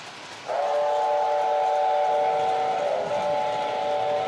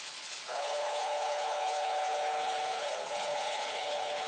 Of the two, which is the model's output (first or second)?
second